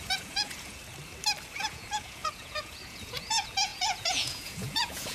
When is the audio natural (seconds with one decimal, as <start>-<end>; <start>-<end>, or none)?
0.8-1.5